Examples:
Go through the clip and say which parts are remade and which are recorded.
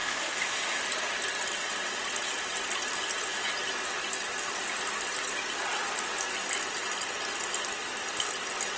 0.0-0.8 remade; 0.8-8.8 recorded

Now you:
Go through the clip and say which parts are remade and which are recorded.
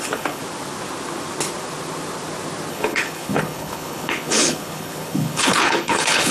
0.0-0.4 remade; 0.4-2.7 recorded; 2.7-6.3 remade